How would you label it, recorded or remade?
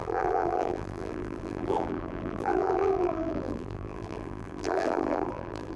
remade